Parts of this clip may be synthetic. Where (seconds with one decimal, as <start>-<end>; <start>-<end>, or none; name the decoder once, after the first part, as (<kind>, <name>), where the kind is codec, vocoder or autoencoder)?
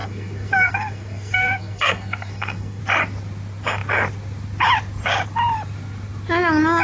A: 0.0-2.8 (codec, SNAC)